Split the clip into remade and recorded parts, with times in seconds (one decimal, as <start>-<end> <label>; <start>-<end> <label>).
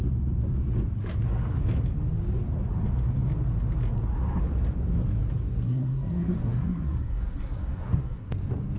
0.0-5.5 recorded; 5.5-8.3 remade; 8.3-8.8 recorded